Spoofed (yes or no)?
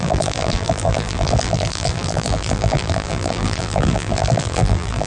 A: yes